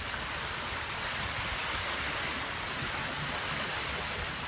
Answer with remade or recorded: recorded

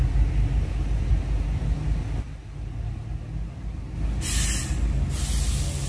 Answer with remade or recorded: recorded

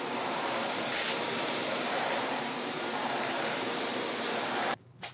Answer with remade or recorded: remade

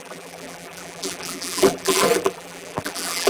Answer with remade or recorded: remade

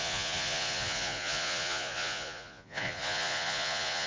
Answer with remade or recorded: remade